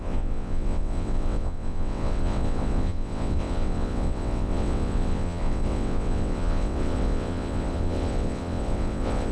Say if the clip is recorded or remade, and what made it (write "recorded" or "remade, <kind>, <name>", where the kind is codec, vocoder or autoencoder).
remade, vocoder, WaveNeXt